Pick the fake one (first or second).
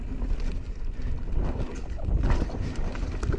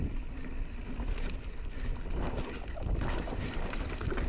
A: second